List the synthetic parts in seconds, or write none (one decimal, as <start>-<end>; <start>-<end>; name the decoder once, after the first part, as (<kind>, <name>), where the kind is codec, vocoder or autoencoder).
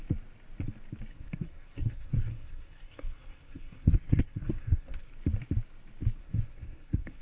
1.1-5.1 (codec, SNAC); 6.2-7.2